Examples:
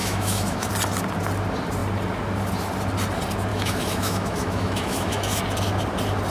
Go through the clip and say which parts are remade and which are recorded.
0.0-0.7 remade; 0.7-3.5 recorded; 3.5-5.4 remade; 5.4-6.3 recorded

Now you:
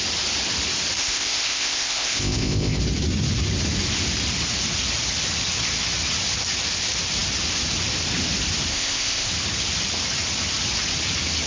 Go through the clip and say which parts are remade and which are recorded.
0.0-1.0 recorded; 1.0-2.8 remade; 2.8-8.7 recorded; 8.7-9.3 remade; 9.3-11.5 recorded

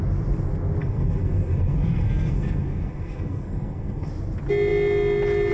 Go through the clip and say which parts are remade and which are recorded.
0.0-0.8 recorded; 0.8-4.1 remade; 4.1-5.5 recorded